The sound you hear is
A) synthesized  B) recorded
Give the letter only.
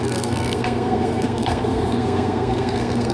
A